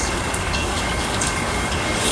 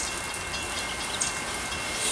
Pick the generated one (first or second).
first